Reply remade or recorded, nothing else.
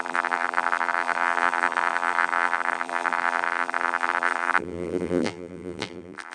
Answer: remade